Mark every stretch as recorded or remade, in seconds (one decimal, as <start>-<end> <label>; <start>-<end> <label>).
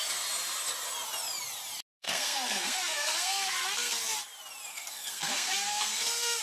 0.0-2.0 recorded; 2.0-4.0 remade; 4.0-4.7 recorded; 4.7-6.4 remade